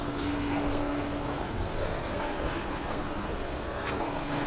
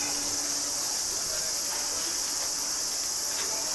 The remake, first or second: first